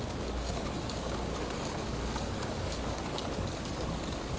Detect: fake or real fake